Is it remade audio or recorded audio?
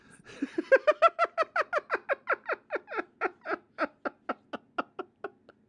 recorded